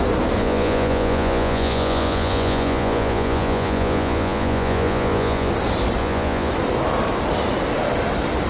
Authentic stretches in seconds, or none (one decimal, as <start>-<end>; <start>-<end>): 0.0-0.4; 5.5-6.0; 6.5-8.5